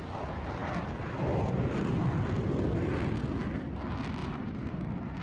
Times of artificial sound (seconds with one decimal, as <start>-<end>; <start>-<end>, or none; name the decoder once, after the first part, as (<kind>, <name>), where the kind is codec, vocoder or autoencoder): 4.2-5.2 (vocoder, BigVGAN v2)